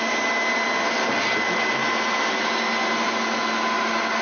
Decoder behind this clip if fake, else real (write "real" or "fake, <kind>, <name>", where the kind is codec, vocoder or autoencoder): real